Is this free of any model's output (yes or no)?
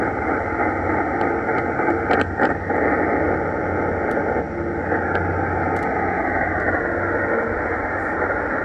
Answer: yes